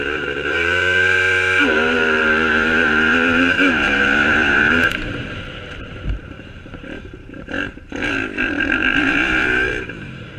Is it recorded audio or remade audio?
remade